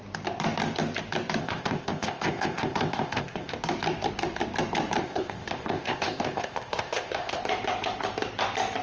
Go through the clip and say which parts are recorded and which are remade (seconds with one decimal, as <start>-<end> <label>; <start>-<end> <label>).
0.0-1.4 recorded; 1.4-3.6 remade; 3.6-5.0 recorded; 5.0-7.4 remade; 7.4-8.8 recorded